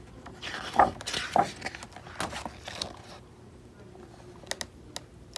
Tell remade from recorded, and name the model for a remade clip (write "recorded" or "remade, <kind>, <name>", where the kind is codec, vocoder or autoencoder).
recorded